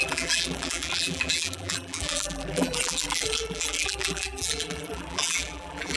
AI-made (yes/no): yes